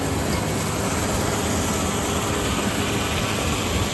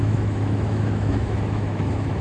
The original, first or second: first